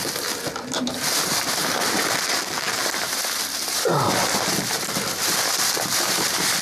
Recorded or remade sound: remade